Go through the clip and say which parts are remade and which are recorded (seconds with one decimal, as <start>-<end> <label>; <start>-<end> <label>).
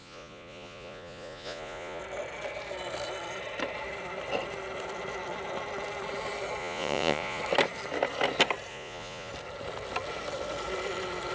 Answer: 0.0-2.0 remade; 2.0-6.6 recorded; 6.6-7.4 remade; 7.4-8.7 recorded; 8.7-9.3 remade; 9.3-11.3 recorded